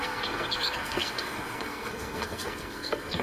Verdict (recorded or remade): remade